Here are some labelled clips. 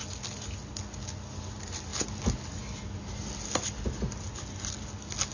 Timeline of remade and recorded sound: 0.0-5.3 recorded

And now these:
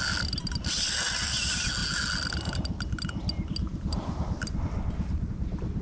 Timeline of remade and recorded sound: 0.0-5.8 recorded